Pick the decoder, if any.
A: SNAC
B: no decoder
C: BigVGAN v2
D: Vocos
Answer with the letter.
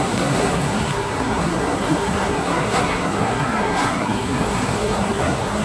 A